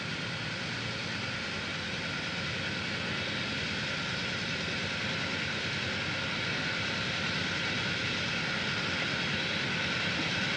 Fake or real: real